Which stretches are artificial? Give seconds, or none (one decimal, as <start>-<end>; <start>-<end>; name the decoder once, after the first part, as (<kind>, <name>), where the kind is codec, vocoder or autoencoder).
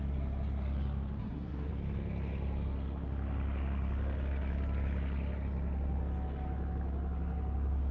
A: 1.2-1.7 (codec, SNAC)